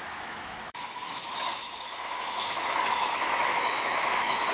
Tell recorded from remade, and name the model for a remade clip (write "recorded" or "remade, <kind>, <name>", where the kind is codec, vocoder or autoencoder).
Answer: remade, autoencoder, DAC-VAE